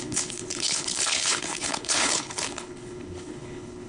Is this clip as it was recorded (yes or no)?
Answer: no